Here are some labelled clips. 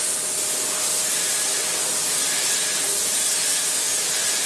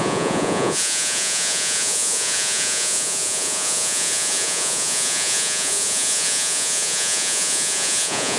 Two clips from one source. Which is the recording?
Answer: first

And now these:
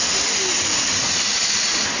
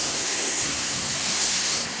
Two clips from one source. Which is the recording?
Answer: first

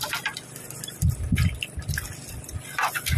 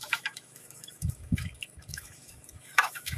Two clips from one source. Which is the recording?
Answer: first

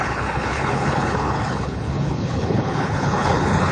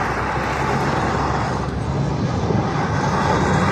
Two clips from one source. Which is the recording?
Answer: second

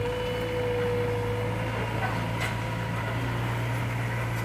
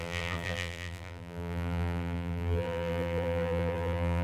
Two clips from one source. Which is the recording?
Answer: first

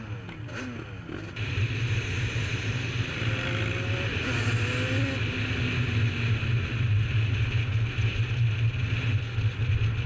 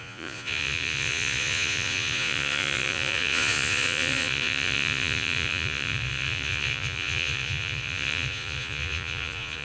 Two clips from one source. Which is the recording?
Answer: first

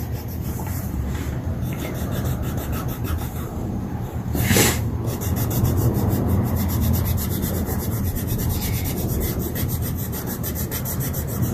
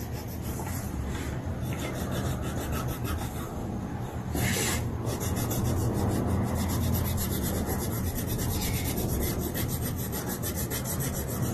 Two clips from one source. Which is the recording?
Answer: second